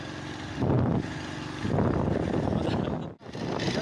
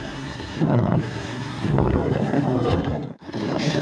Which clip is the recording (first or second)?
first